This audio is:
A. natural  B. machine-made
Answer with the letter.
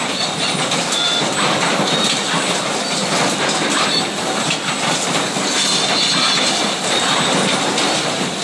A